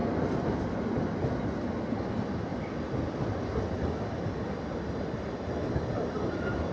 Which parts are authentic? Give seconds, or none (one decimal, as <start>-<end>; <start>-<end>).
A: 0.0-6.7